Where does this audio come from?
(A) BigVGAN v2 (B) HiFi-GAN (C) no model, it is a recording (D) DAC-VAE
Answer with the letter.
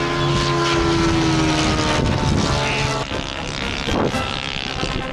C